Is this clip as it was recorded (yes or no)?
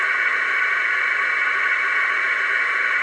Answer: yes